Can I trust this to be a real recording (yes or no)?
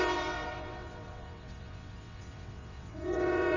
no